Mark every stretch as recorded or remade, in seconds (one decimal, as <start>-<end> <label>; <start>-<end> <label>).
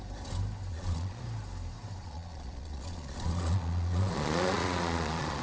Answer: 0.0-0.7 recorded; 0.7-1.2 remade; 1.2-2.0 recorded; 2.0-5.4 remade